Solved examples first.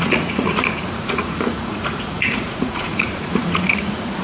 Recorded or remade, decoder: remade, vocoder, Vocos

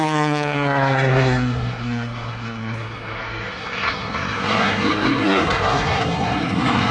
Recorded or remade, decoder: remade, codec, SNAC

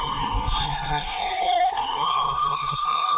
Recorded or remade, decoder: remade, codec, SNAC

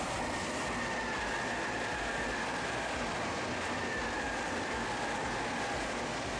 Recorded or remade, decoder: recorded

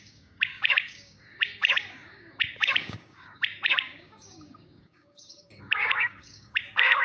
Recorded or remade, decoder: remade, codec, DAC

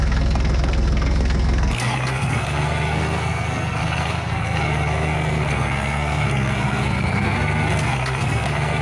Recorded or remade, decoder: remade, codec, SNAC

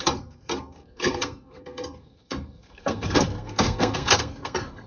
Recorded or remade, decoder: remade, codec, SNAC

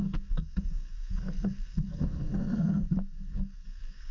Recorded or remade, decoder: remade, codec, SNAC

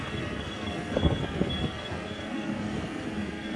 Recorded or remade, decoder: remade, codec, SNAC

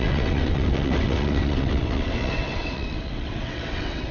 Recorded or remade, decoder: remade, vocoder, WaveNeXt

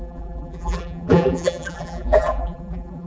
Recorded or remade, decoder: remade, vocoder, BigVGAN v2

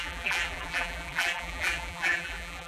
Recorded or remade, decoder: remade, vocoder, BigVGAN v2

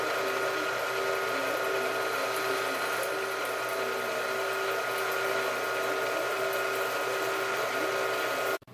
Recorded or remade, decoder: recorded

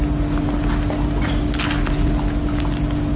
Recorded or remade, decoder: recorded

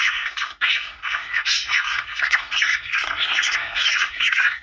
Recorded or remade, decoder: remade, codec, SNAC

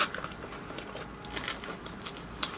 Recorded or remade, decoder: recorded